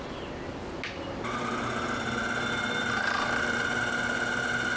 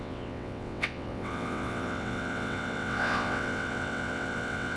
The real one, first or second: first